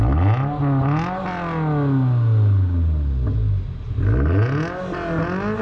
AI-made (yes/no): no